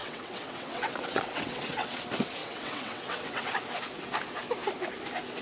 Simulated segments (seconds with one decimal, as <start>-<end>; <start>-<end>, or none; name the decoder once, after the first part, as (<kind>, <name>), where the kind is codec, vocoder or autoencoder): 0.0-2.0 (vocoder, WaveNeXt); 2.4-3.5